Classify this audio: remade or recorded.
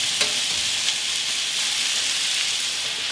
recorded